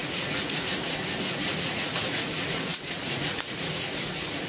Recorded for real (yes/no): no